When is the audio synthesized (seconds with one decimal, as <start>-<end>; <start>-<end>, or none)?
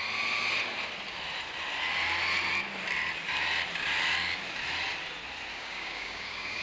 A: 5.5-6.6